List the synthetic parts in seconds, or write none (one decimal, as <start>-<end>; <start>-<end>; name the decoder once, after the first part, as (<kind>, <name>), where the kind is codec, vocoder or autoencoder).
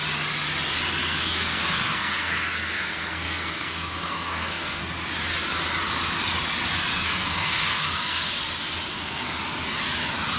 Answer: 1.0-4.8 (codec, SNAC); 6.9-8.3; 8.9-9.4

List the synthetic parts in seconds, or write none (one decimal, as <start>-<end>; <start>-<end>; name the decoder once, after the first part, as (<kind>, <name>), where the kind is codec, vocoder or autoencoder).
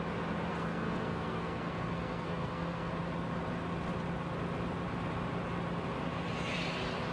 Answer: 0.5-2.9 (codec, SNAC)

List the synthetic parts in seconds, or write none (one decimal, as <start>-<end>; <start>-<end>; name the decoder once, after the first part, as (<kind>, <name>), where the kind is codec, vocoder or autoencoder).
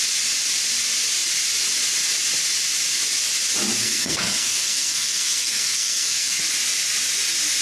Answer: 3.8-6.4 (codec, SNAC)